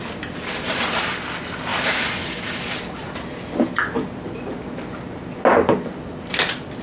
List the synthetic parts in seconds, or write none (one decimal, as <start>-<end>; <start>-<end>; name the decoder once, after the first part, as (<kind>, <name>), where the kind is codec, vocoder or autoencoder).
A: none